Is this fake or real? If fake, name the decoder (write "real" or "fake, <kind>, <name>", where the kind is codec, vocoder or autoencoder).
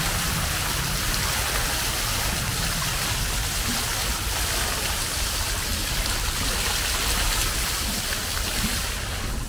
real